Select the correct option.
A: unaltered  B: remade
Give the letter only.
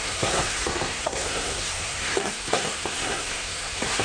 B